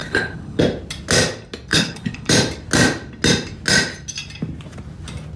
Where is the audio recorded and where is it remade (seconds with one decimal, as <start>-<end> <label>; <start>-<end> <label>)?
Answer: 0.0-0.6 remade; 0.6-1.7 recorded; 1.7-2.3 remade; 2.3-5.4 recorded